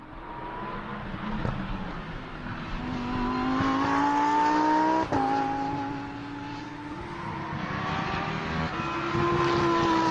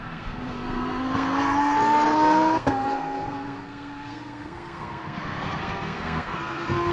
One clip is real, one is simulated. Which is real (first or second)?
first